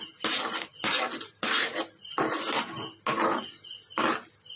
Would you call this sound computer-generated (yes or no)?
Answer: no